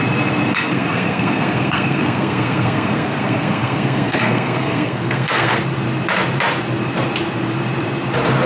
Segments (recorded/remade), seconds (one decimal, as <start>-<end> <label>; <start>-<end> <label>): 0.0-0.5 recorded; 0.5-5.6 remade; 5.6-8.5 recorded